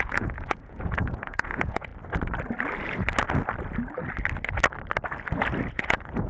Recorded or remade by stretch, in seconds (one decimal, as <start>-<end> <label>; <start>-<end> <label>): 0.0-1.9 remade; 1.9-5.7 recorded; 5.7-6.3 remade